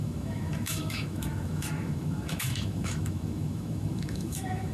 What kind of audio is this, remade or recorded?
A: remade